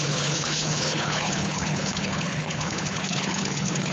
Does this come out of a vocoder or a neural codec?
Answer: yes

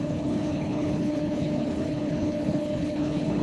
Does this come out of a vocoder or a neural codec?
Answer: yes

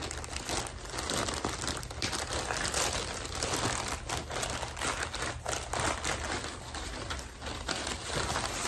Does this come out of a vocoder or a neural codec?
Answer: no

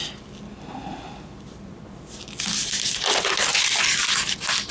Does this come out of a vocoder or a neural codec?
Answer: no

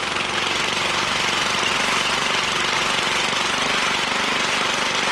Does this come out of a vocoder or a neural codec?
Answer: no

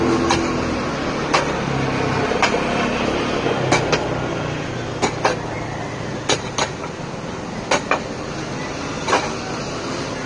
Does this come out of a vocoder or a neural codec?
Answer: no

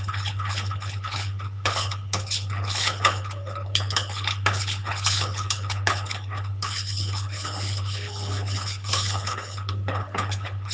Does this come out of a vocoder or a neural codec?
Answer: yes